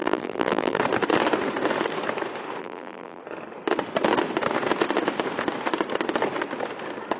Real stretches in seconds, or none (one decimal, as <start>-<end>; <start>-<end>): 0.8-2.6; 3.2-7.2

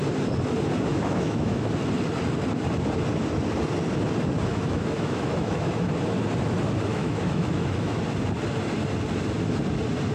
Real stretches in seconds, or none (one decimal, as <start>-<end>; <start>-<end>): 0.0-0.9; 1.7-4.5; 5.9-6.9; 8.0-10.1

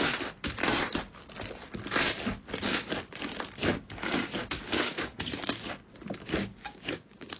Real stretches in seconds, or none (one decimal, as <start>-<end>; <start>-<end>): 0.0-4.4; 5.4-6.4

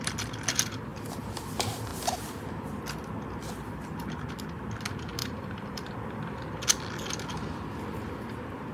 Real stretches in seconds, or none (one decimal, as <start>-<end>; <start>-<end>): 0.0-5.2; 6.5-8.7

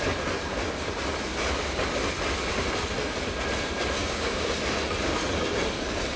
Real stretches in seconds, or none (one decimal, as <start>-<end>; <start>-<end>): 0.0-4.0; 4.5-6.2

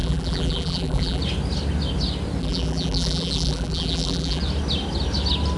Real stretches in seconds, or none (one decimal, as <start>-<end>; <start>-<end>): 1.2-2.4; 4.4-5.6

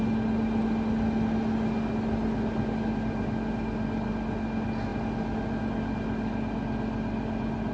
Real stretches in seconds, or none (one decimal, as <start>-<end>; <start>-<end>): 0.0-7.7

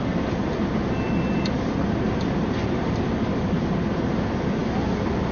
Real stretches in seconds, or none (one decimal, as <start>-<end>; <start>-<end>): 0.0-5.3